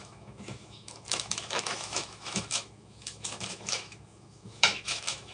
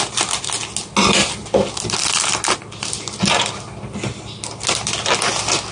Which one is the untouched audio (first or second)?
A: second